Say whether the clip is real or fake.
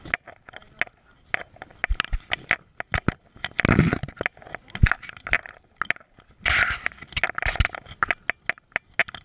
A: real